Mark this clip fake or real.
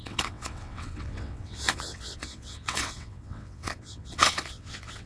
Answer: fake